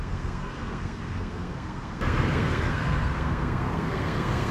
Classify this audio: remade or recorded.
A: remade